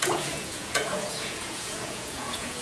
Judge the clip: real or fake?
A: fake